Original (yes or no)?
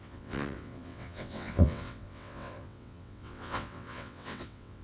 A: no